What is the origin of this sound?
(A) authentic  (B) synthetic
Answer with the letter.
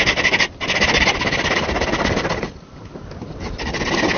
A